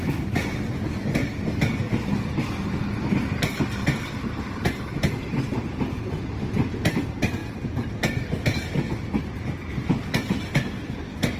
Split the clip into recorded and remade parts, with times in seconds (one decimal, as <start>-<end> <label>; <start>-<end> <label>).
0.0-11.4 recorded